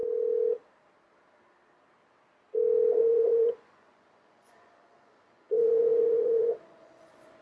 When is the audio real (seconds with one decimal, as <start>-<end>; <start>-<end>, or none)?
0.0-3.0